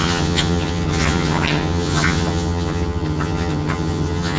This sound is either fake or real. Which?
fake